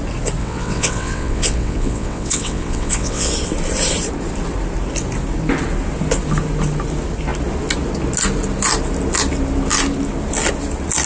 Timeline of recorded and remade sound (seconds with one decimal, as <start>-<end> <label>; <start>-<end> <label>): 0.0-0.4 recorded; 0.4-3.3 remade; 3.3-11.1 recorded